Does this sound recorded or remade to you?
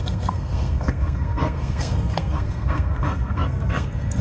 remade